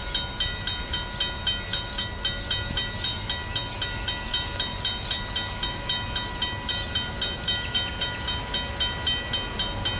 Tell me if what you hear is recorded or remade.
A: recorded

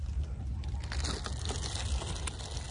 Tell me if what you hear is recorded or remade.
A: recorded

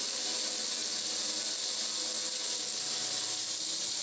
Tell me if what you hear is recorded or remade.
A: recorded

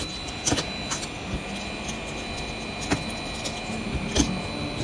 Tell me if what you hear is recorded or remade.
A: recorded